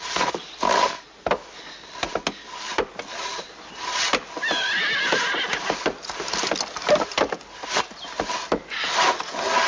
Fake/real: real